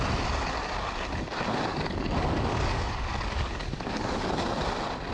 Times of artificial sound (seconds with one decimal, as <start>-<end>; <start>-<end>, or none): 1.7-4.3